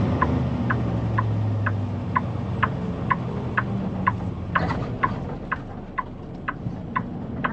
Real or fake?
real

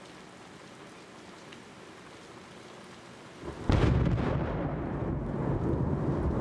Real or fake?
real